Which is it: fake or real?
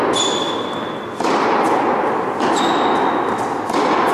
real